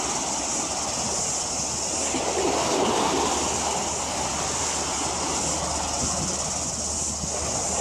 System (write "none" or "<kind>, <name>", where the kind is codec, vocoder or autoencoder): none